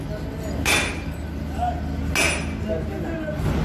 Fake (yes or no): no